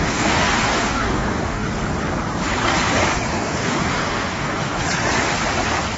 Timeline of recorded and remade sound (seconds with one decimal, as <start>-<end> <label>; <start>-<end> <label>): 0.0-1.7 remade; 1.7-3.3 recorded; 3.3-4.8 remade; 4.8-6.0 recorded